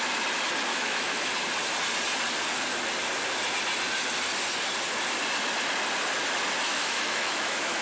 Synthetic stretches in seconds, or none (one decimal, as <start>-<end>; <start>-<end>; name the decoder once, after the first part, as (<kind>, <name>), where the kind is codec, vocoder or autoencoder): 0.7-1.3 (autoencoder, DAC-VAE); 6.7-7.8